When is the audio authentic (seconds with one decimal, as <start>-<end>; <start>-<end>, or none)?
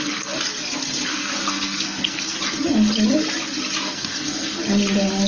0.0-1.1; 2.4-3.8; 4.6-5.3